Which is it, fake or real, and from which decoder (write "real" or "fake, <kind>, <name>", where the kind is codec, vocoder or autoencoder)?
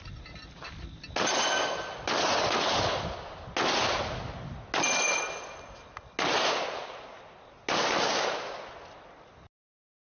real